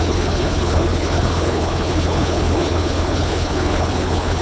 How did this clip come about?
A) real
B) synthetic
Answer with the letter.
B